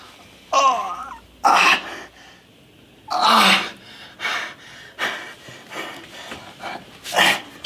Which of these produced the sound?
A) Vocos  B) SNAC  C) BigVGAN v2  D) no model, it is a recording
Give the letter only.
D